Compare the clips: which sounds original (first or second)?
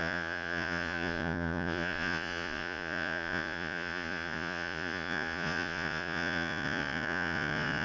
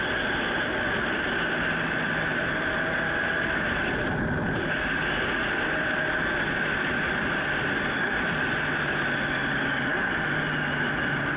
second